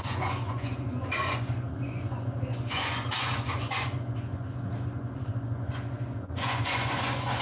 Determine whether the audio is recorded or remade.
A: remade